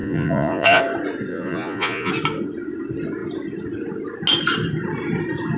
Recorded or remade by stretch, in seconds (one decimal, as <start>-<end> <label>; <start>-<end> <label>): 0.0-0.8 remade; 0.8-1.3 recorded; 1.3-2.1 remade; 2.1-5.6 recorded